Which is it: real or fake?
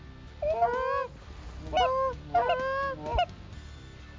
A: real